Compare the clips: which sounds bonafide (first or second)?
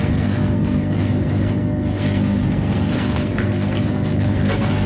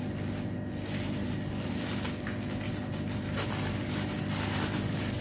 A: second